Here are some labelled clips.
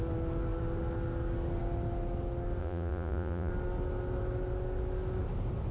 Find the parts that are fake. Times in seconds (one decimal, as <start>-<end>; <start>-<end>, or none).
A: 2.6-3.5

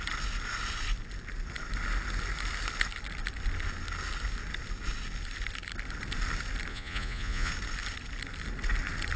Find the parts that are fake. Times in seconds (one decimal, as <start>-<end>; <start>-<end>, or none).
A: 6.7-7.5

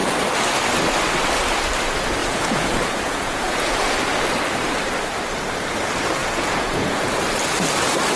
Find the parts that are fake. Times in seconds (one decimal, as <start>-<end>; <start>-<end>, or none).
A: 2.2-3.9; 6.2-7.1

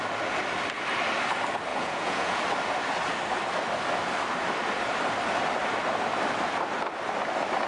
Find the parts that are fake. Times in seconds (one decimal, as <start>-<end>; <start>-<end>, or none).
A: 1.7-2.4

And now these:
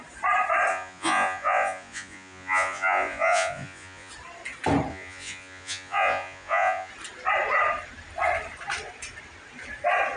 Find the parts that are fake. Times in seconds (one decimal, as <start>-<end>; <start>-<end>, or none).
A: 0.7-4.1; 4.9-6.9

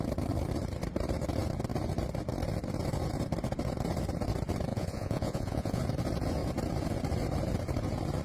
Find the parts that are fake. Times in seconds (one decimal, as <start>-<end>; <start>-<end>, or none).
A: 4.7-5.8

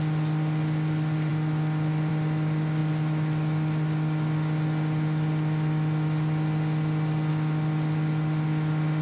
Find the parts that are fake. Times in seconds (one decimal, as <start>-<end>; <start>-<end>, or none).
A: none